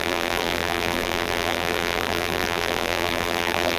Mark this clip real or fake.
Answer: fake